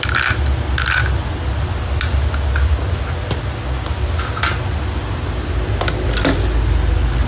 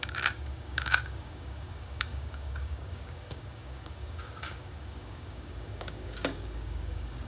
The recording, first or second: first